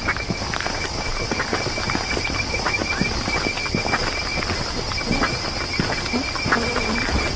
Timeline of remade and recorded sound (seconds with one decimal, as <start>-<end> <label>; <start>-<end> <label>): 0.0-2.8 remade; 2.8-3.8 recorded; 3.8-4.3 remade; 4.3-7.4 recorded